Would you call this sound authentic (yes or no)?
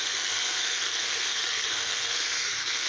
no